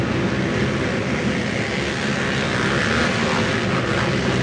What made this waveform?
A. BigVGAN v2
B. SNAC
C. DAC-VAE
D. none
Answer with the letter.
D